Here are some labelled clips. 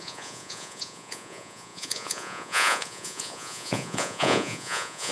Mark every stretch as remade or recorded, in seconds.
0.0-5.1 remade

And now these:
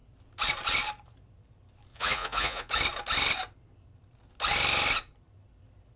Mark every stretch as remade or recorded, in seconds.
0.0-1.9 recorded; 1.9-2.7 remade; 2.7-6.0 recorded

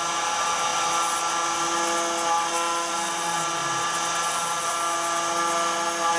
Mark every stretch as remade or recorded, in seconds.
0.0-6.2 recorded

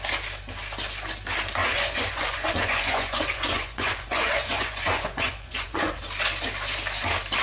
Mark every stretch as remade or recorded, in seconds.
0.0-1.6 recorded; 1.6-6.0 remade; 6.0-7.4 recorded